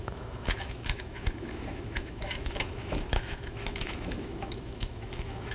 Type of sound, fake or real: fake